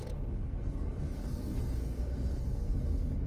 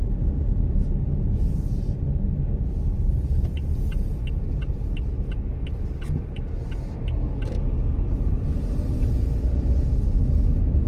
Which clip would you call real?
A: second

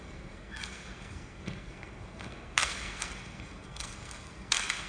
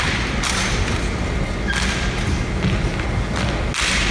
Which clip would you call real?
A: second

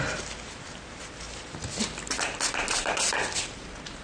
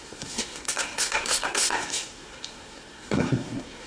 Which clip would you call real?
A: first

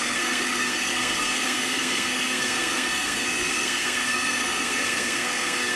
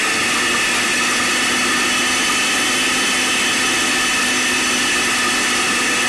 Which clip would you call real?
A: second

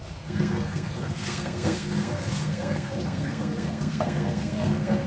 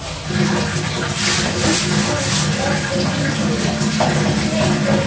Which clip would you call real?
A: second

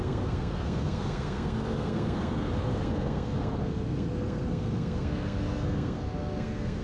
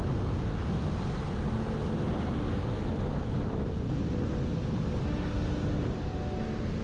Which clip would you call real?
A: second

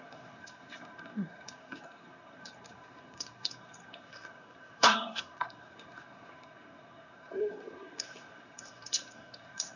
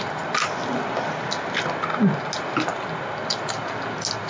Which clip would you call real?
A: second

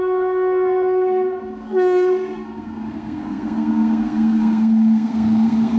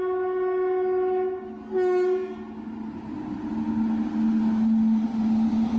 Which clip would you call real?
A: second